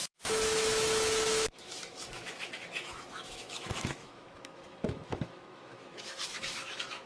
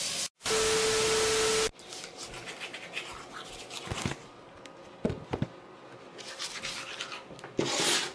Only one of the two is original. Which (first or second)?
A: second